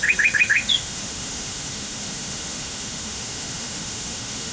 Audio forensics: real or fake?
fake